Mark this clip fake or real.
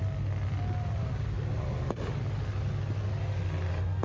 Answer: real